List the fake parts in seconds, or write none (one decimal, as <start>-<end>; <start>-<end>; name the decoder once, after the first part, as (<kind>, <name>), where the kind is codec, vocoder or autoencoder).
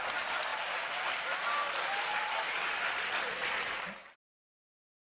0.0-0.5 (vocoder, BigVGAN v2); 2.0-3.4; 4.4-5.0